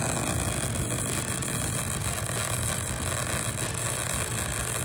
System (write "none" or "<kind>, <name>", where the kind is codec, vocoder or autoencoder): none